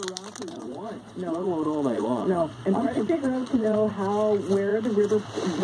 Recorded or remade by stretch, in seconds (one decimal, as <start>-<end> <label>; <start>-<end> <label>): 0.0-0.5 recorded; 0.5-3.9 remade; 3.9-5.6 recorded

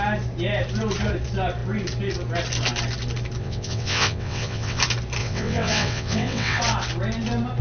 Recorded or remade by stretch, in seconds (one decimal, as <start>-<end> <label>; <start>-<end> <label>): 0.0-3.4 recorded; 3.4-4.8 remade; 4.8-5.2 recorded; 5.2-6.6 remade; 6.6-7.6 recorded

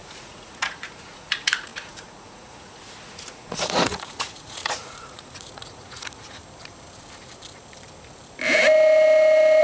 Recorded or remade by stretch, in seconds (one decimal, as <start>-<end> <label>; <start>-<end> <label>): 0.0-6.4 remade; 6.4-9.6 recorded

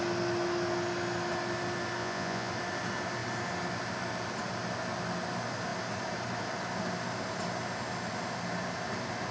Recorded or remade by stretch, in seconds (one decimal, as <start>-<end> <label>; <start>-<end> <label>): 0.0-2.0 recorded; 2.0-2.5 remade; 2.5-9.3 recorded

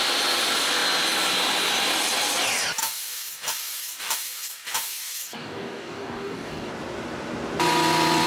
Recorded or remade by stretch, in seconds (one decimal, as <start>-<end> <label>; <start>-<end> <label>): 0.0-2.8 recorded; 2.8-6.7 remade; 6.7-8.3 recorded